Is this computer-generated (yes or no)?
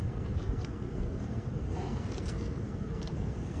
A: yes